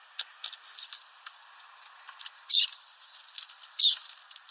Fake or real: real